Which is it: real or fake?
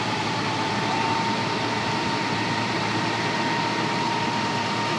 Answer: fake